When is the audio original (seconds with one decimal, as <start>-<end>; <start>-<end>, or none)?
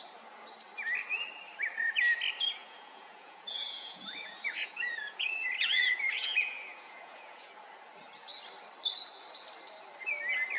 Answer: 0.0-2.6; 7.5-10.6